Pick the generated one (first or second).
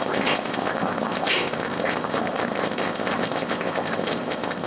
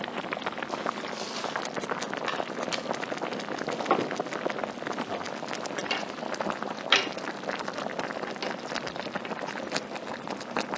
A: first